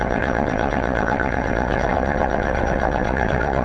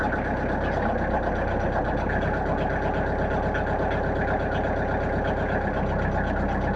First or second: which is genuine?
second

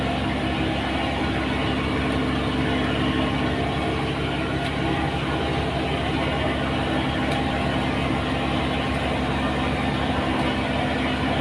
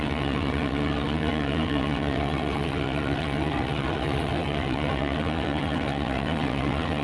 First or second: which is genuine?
first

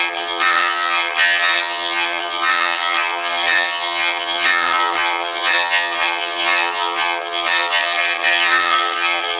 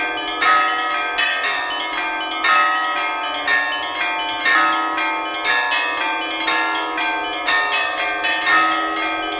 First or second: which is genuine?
second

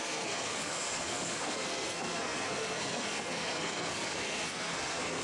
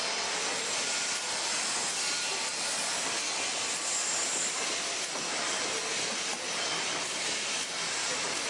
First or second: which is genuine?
second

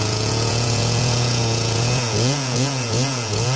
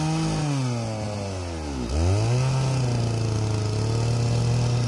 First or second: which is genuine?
second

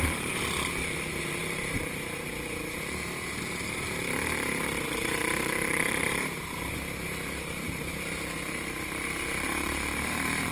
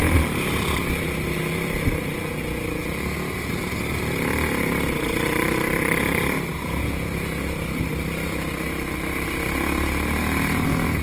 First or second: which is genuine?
second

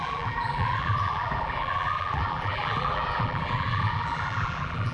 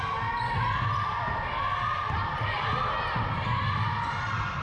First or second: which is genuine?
second